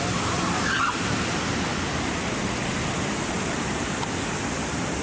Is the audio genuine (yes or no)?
yes